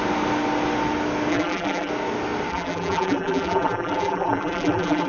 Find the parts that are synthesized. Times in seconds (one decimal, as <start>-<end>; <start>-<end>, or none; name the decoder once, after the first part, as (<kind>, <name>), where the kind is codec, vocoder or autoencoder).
1.3-1.9 (vocoder, BigVGAN v2); 2.5-5.1